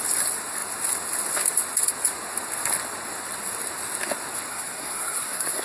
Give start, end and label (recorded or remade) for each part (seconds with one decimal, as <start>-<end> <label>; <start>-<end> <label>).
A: 0.0-4.5 recorded; 4.5-5.6 remade